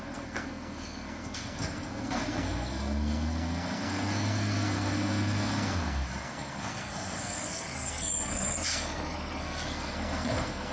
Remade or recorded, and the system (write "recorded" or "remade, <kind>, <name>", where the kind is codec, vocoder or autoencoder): remade, codec, SNAC